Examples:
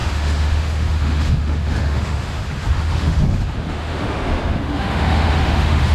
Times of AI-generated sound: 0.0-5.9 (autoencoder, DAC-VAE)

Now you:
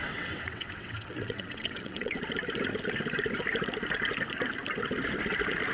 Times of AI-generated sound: 0.0-2.2 (vocoder, WaveNeXt)

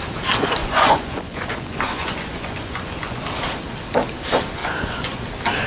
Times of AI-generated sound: 0.6-3.2 (vocoder, Vocos); 4.6-5.2

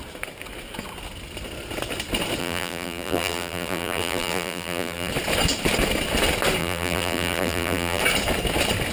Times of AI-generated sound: 2.4-5.1 (vocoder, BigVGAN v2); 6.6-8.0